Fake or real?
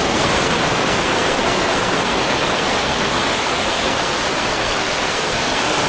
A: fake